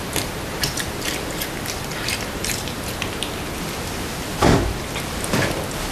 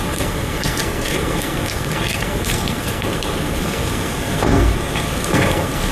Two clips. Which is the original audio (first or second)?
first